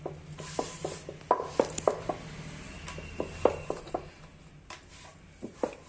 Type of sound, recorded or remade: recorded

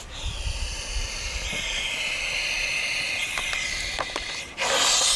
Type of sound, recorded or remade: recorded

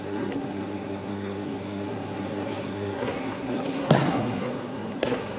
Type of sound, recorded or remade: remade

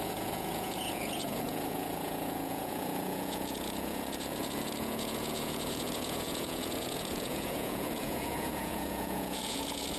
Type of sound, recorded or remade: remade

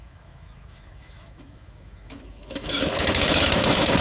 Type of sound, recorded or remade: remade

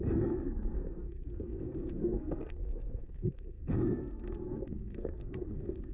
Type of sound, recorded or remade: remade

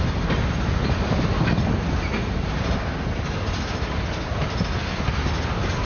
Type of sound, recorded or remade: recorded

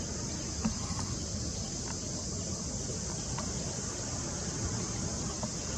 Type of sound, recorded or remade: recorded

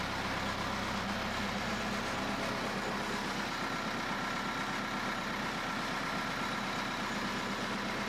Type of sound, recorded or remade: recorded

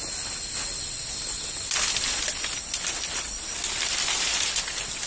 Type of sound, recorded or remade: recorded